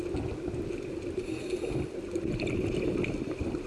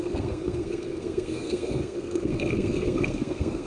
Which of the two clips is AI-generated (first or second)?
second